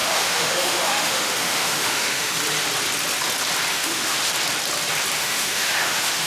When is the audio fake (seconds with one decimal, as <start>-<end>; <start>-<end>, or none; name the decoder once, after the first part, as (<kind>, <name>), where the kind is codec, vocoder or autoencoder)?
0.0-2.4 (autoencoder, DAC-VAE); 3.7-4.3; 5.2-6.3